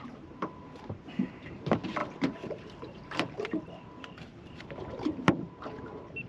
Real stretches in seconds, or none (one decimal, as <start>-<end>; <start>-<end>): none